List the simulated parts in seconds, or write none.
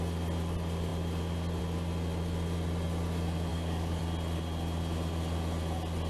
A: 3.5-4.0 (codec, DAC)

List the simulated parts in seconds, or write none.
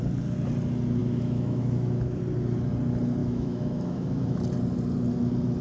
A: 1.0-2.2 (autoencoder, DAC-VAE); 3.2-4.4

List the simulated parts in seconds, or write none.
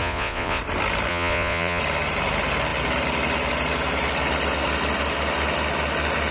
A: 0.0-0.6 (vocoder, Vocos); 1.1-1.8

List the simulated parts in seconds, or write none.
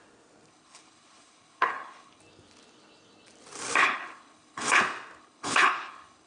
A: 0.5-2.2 (codec, HILCodec); 3.8-4.8; 5.2-6.3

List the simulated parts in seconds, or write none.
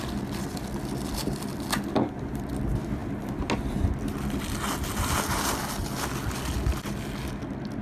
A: none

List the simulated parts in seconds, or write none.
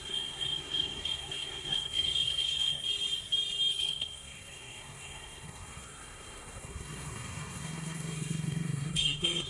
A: 0.0-2.8 (codec, SNAC); 3.7-9.5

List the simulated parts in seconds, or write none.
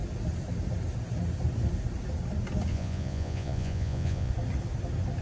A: 2.7-4.3 (vocoder, Vocos)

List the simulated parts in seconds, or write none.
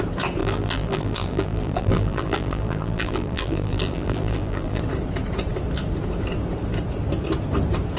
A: 0.4-4.8 (vocoder, BigVGAN v2)